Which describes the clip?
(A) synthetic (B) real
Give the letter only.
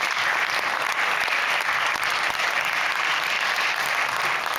B